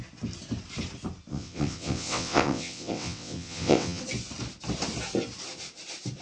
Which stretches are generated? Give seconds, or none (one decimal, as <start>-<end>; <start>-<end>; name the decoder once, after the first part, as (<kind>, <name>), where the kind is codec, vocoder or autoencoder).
1.3-4.0 (vocoder, WaveNeXt)